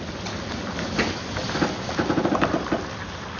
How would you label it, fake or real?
fake